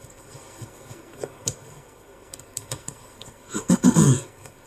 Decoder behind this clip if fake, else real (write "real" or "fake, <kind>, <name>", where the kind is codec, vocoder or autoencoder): fake, codec, SNAC